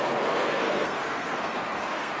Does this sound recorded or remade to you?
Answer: remade